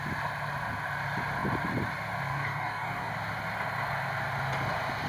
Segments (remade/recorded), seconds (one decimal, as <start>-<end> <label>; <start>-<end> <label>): 0.0-2.3 recorded; 2.3-3.1 remade; 3.1-5.1 recorded